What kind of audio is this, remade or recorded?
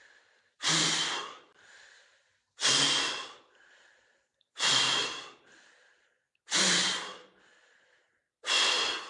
recorded